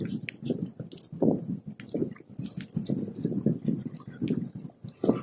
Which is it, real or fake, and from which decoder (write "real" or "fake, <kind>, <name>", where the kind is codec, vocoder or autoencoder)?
real